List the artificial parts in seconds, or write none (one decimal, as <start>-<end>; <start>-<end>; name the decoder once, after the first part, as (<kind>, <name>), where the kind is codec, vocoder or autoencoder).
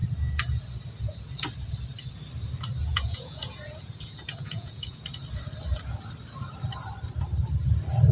2.9-5.0 (vocoder, Vocos)